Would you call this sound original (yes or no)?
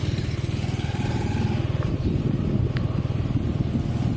yes